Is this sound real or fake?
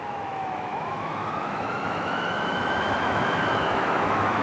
fake